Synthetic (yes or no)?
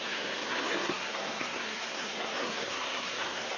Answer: yes